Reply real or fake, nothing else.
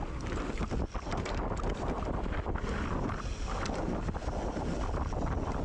real